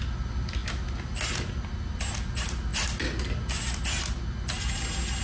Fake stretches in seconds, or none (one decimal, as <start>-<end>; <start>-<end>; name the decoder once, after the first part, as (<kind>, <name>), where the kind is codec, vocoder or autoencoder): none